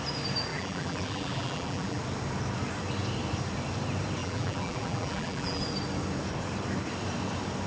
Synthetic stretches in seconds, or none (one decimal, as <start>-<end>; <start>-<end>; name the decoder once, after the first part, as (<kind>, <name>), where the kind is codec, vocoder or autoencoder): 0.5-2.0 (vocoder, BigVGAN v2); 4.2-5.6